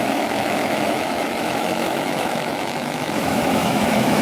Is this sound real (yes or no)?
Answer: no